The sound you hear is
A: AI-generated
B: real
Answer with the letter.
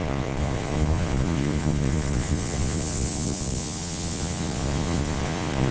A